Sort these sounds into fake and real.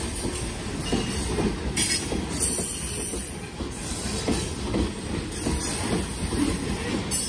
real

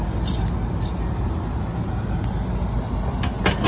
real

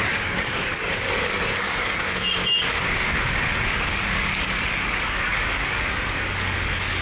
fake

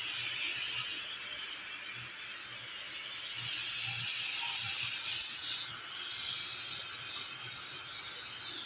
real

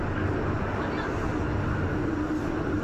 real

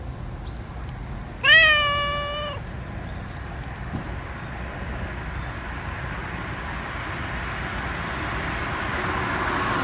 real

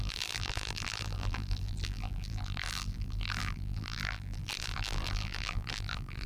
fake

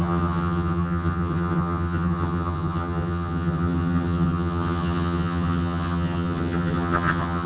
fake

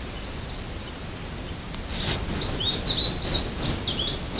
real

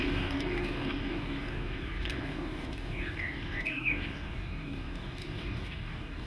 fake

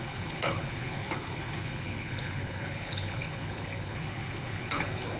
fake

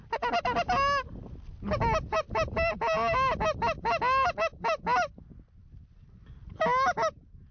real